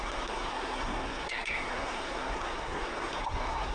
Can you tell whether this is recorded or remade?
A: remade